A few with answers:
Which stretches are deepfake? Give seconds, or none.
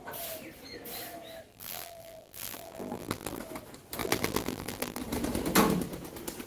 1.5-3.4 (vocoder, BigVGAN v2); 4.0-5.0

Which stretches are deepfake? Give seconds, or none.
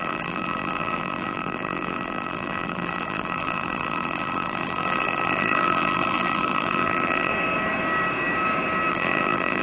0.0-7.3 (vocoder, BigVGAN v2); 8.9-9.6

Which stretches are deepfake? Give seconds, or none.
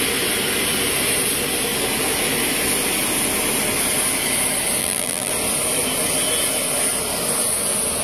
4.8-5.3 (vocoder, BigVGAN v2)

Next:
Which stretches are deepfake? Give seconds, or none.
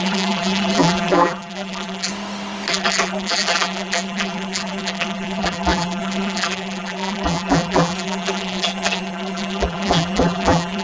0.0-2.1 (vocoder, BigVGAN v2); 2.7-10.8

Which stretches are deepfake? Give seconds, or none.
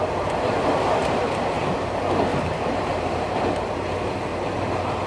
1.0-1.6 (vocoder, BigVGAN v2); 2.3-3.4